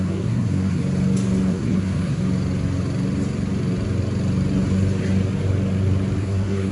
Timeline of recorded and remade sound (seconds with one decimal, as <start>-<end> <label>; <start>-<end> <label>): 0.0-0.8 remade; 0.8-1.5 recorded; 1.5-2.2 remade; 2.2-6.2 recorded; 6.2-6.7 remade